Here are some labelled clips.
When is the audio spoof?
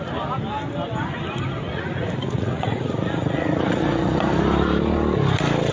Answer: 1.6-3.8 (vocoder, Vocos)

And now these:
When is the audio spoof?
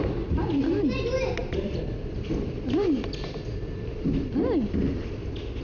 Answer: none